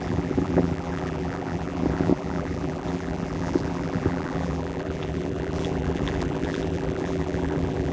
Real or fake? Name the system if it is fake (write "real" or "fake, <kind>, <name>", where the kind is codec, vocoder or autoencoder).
fake, vocoder, BigVGAN v2